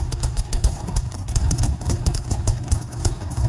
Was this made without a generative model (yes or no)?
no